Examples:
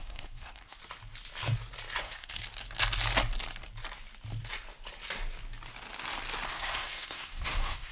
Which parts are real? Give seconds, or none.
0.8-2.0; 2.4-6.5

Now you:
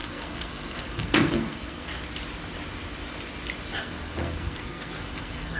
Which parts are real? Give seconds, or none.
1.9-3.8

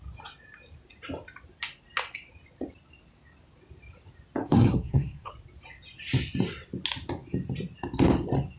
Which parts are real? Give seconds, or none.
0.0-4.4; 5.3-8.6

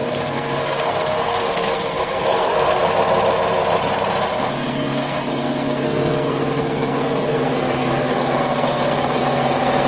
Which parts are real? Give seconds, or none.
2.8-4.5

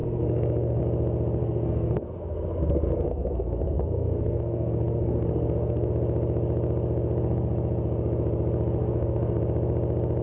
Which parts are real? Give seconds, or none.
0.8-1.4; 5.9-8.8; 9.4-10.2

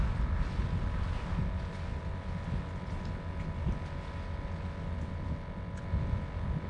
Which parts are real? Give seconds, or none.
0.0-6.7